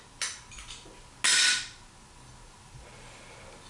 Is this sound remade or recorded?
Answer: recorded